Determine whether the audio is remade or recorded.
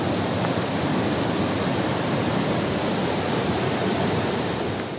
recorded